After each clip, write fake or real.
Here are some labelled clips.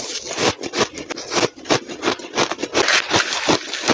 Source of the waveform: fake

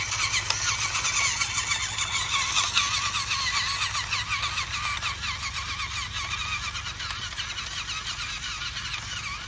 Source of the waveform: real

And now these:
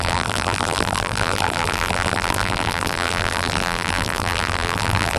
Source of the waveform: fake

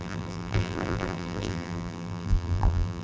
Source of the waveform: fake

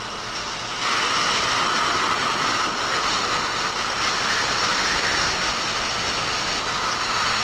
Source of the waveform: real